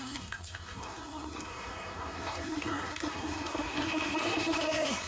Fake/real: fake